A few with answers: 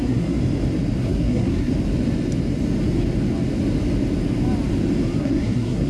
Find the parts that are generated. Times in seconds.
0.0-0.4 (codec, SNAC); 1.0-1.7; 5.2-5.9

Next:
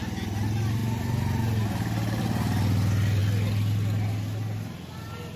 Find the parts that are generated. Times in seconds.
none

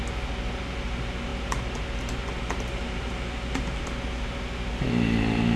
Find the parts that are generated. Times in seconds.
none

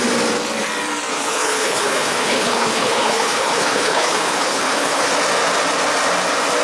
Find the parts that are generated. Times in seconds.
1.1-5.1 (codec, HILCodec)

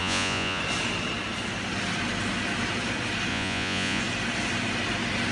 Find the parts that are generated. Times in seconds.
0.0-0.6 (vocoder, Vocos); 3.3-4.0